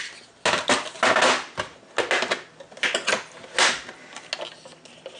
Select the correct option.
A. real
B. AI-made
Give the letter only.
A